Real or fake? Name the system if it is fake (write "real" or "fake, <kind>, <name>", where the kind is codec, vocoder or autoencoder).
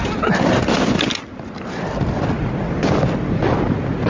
real